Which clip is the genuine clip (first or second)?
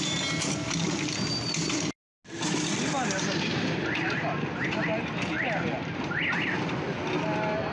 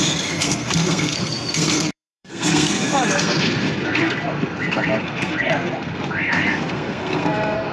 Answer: first